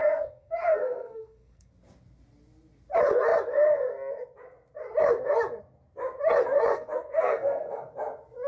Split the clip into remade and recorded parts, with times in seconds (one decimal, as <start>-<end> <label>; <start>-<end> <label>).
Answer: 0.0-1.7 remade; 1.7-6.7 recorded; 6.7-7.9 remade; 7.9-8.5 recorded